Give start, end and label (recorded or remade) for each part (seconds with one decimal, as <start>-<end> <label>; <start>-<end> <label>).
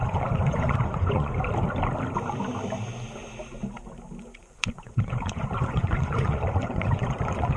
0.0-1.3 remade; 1.3-4.2 recorded; 4.2-7.6 remade